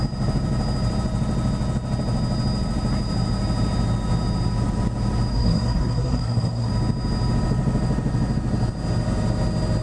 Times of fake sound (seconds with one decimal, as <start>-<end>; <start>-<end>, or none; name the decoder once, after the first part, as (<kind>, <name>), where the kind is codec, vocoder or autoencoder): 5.3-6.7 (codec, SNAC)